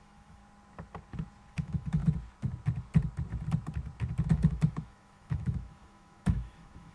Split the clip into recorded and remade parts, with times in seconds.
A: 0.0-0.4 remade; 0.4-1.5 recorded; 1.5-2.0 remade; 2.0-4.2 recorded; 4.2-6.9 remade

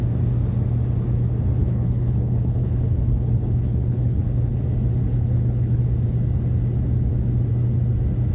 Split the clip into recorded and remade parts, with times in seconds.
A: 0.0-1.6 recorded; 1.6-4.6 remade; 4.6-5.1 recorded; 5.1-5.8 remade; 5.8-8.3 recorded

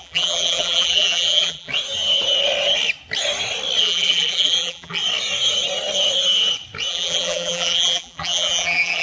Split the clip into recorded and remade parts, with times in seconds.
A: 0.0-1.7 remade; 1.7-3.8 recorded; 3.8-5.0 remade; 5.0-6.9 recorded; 6.9-9.0 remade

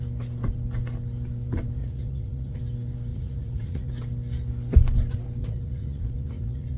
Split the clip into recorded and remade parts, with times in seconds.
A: 0.0-1.8 recorded; 1.8-2.6 remade; 2.6-3.1 recorded; 3.1-3.9 remade; 3.9-5.4 recorded; 5.4-6.8 remade

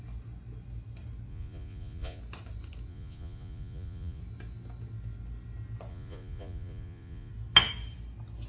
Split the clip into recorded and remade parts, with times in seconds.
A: 0.0-1.3 recorded; 1.3-2.2 remade; 2.2-2.9 recorded; 2.9-4.2 remade; 4.2-5.9 recorded; 5.9-7.3 remade; 7.3-8.5 recorded